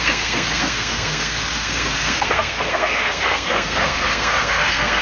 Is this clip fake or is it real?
fake